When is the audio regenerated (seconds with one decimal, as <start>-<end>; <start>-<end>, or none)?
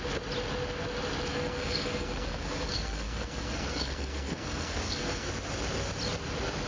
1.3-5.3